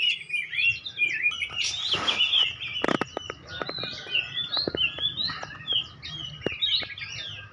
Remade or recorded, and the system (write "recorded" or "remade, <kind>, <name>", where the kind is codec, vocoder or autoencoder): recorded